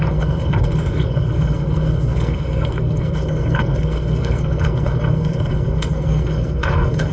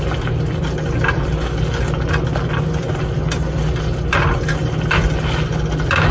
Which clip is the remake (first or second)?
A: first